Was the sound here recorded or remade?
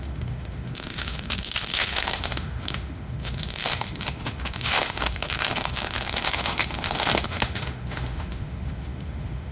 remade